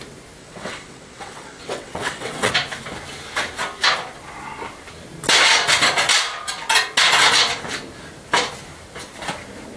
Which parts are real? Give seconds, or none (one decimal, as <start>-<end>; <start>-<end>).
0.0-0.4; 2.5-9.8